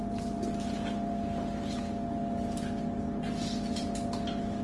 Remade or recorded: recorded